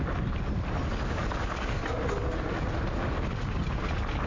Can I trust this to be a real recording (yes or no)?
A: yes